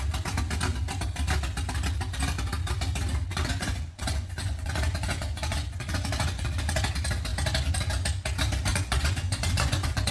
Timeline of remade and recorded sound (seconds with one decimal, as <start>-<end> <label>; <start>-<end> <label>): 0.0-3.3 recorded; 3.3-6.7 remade; 6.7-8.7 recorded; 8.7-10.1 remade